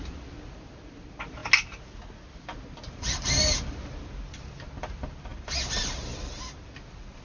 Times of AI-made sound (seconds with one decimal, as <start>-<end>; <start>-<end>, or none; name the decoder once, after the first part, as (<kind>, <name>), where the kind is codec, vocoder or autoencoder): 0.0-1.4 (vocoder, BigVGAN v2); 2.9-7.2